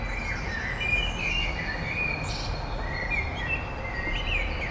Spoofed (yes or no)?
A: no